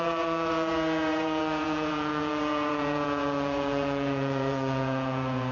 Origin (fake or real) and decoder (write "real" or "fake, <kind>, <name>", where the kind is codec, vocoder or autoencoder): fake, vocoder, Vocos